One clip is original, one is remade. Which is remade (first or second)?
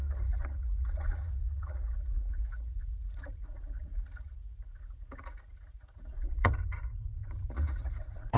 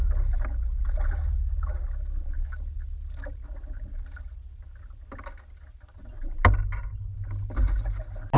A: first